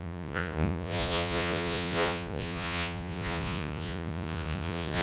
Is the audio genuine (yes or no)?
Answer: no